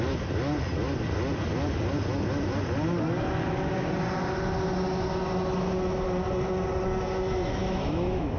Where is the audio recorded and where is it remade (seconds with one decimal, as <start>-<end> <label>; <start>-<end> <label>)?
0.0-7.6 recorded; 7.6-8.4 remade